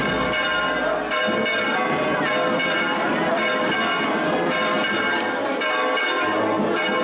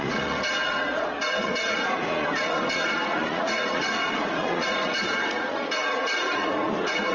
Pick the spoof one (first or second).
second